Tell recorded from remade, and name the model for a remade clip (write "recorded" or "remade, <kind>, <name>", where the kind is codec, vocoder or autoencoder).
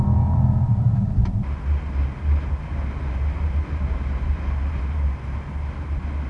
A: recorded